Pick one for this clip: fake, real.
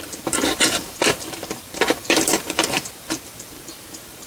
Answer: fake